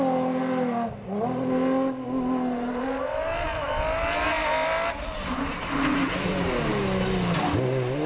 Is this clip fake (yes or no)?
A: no